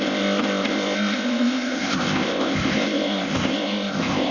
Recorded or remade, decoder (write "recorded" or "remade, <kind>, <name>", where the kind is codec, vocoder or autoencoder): remade, codec, ZipCodec